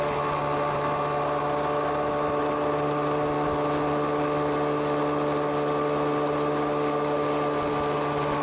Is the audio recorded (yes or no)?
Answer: yes